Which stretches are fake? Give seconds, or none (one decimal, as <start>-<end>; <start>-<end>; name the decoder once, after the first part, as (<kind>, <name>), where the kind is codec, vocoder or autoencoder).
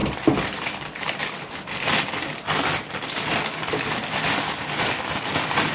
0.0-2.0 (vocoder, BigVGAN v2)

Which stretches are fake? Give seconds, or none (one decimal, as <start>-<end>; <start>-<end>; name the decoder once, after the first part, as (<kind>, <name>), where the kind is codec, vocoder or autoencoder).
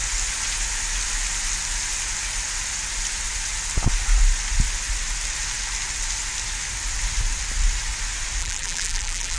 8.4-9.4 (vocoder, BigVGAN v2)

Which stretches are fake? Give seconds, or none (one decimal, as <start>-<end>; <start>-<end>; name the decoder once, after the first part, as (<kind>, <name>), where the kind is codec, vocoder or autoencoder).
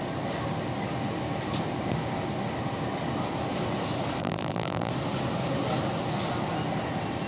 4.2-4.9 (vocoder, BigVGAN v2)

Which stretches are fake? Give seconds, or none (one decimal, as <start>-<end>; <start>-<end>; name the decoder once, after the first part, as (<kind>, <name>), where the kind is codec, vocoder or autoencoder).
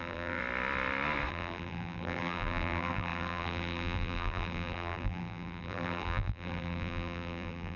0.0-0.4 (vocoder, BigVGAN v2); 1.3-7.8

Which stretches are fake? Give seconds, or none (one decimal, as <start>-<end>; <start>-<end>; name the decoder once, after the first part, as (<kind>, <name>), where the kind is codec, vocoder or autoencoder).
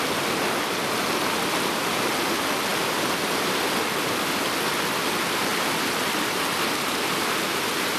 5.5-7.1 (vocoder, BigVGAN v2)